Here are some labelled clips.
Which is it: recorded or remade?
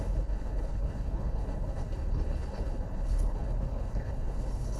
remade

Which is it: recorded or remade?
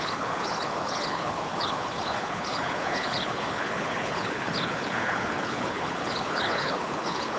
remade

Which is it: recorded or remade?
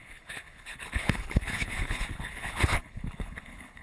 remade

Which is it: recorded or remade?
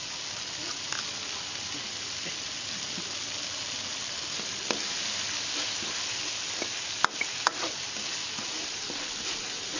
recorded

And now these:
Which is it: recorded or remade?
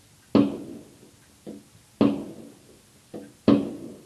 recorded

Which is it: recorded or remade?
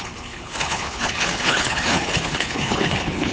remade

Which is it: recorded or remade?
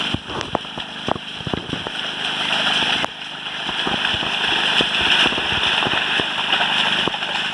recorded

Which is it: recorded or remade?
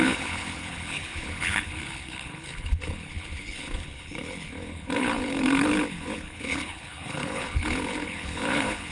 remade